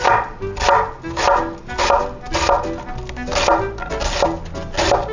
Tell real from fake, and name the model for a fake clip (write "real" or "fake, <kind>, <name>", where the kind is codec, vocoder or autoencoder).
real